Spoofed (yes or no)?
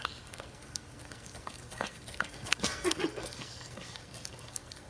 yes